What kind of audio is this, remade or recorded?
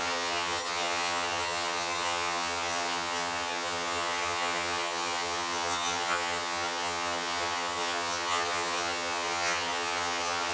remade